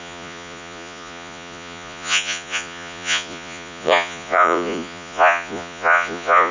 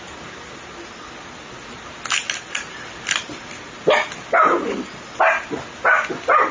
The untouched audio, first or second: second